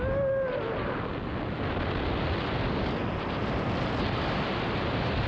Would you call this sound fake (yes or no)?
no